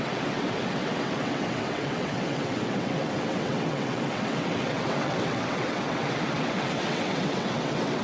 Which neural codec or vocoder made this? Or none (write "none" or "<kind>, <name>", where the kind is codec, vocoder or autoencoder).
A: vocoder, WaveNeXt